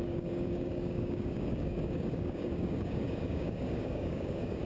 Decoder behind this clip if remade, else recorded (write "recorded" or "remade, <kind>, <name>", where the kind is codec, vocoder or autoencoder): remade, codec, DAC